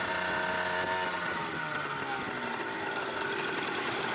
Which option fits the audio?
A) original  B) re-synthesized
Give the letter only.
A